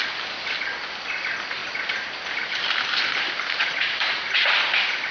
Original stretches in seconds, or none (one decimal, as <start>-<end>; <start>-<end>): 0.0-3.6; 4.5-5.1